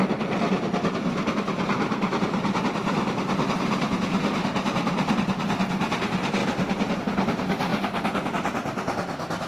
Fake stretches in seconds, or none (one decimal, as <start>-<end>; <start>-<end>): 1.7-5.4; 6.4-7.0